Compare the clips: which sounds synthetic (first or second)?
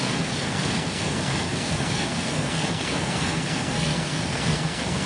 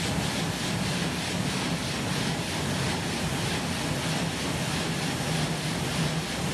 first